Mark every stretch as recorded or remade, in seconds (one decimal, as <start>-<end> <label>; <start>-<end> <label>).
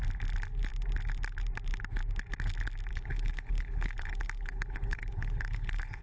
0.0-2.9 recorded; 2.9-6.0 remade